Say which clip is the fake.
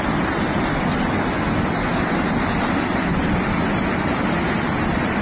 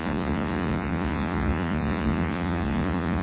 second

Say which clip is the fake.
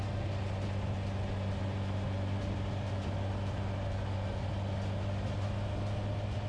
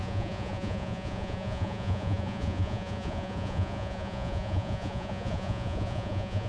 second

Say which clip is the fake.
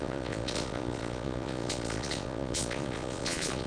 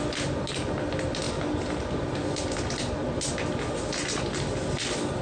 first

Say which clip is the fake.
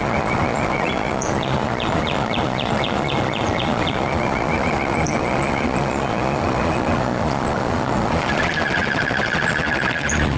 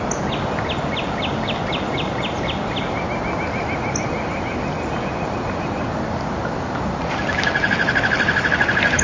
first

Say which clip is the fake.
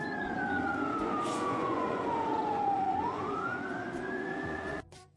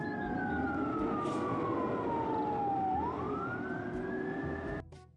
first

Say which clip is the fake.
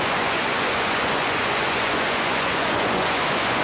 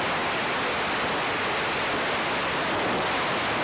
first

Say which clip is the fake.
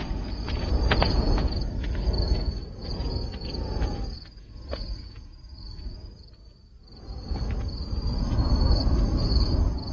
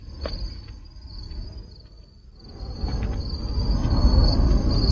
first